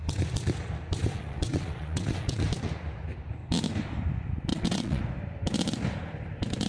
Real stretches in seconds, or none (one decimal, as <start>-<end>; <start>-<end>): 0.0-1.0; 2.4-4.5; 5.0-6.7